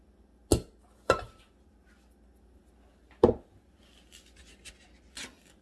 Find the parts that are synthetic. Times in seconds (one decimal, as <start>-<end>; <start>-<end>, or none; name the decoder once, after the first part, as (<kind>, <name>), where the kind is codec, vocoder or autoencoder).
none